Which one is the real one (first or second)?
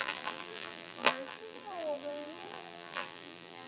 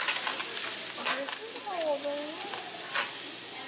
second